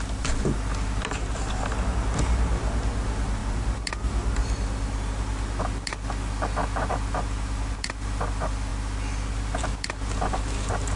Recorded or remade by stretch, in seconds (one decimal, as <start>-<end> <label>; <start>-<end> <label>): 0.0-11.0 recorded